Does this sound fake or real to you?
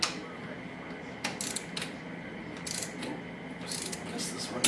real